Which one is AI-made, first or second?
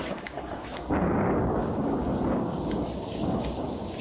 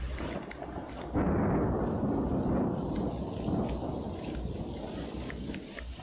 first